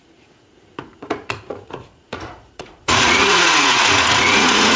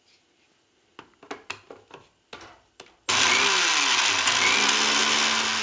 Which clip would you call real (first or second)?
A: second